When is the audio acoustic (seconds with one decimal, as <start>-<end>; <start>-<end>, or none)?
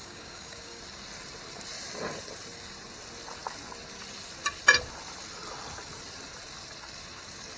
0.8-7.6